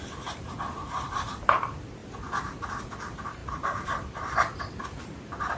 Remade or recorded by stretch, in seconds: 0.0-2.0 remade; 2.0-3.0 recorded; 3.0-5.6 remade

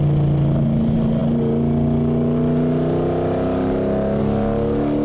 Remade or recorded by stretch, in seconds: 0.0-5.0 recorded

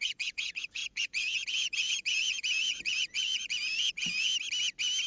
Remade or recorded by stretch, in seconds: 0.0-4.3 remade; 4.3-5.1 recorded

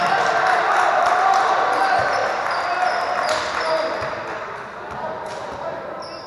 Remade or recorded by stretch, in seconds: 0.0-6.3 recorded

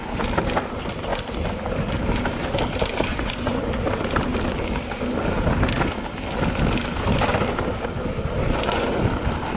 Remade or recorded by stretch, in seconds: 0.0-3.1 recorded; 3.1-3.7 remade; 3.7-8.4 recorded; 8.4-9.0 remade; 9.0-9.6 recorded

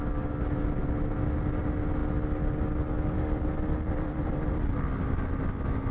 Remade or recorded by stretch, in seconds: 0.0-5.9 recorded

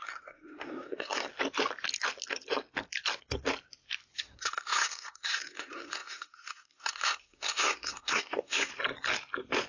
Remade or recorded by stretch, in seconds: 0.0-1.3 remade; 1.3-4.2 recorded; 4.2-8.7 remade; 8.7-9.7 recorded